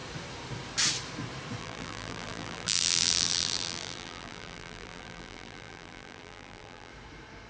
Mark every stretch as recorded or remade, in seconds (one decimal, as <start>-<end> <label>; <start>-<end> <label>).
0.0-1.6 recorded; 1.6-6.9 remade; 6.9-7.5 recorded